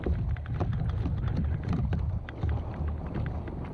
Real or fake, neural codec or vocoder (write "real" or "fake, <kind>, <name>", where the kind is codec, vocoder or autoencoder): real